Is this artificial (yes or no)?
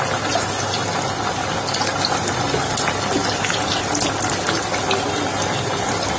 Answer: no